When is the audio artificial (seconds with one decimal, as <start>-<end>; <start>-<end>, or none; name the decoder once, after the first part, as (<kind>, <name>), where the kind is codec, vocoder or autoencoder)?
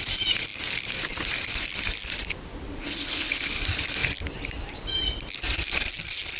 2.8-3.5 (codec, HILCodec)